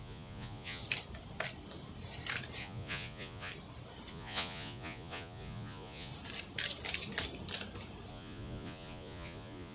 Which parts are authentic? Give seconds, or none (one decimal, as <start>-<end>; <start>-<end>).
0.8-2.6; 3.5-4.1; 6.1-8.1